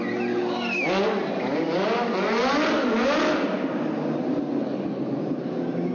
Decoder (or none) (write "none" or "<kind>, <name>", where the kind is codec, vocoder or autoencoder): none